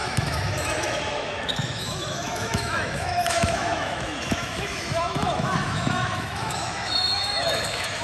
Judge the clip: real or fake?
fake